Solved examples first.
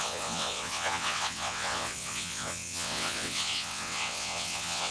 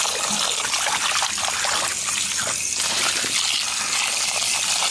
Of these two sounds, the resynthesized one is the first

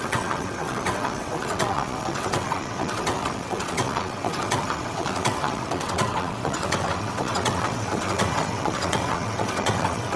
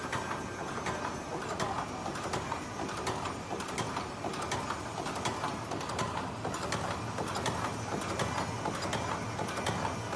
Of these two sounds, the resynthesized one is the first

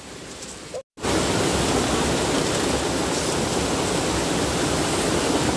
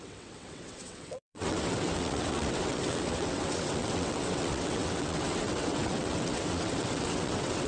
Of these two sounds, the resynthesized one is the second